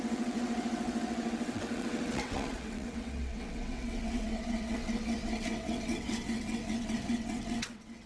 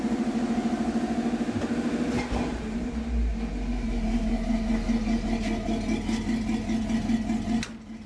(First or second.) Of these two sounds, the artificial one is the first